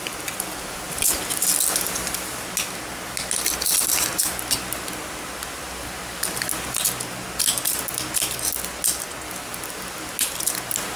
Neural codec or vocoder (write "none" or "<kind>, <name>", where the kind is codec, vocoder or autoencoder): none